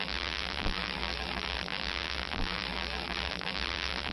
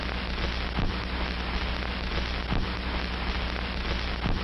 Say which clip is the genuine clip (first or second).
second